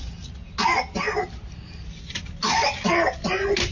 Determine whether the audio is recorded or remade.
recorded